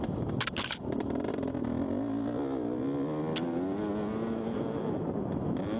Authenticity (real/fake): real